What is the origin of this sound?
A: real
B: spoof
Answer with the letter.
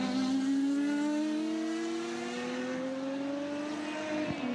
A